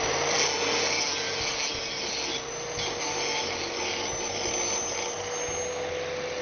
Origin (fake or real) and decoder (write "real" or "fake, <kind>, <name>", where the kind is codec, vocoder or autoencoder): real